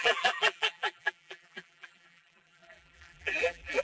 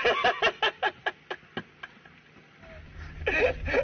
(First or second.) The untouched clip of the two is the second